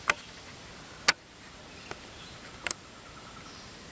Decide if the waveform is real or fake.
real